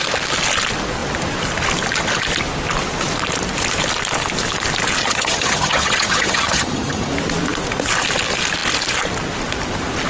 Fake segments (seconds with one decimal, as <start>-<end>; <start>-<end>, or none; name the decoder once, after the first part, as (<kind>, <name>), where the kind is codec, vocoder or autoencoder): 5.0-7.1 (vocoder, HiFi-GAN)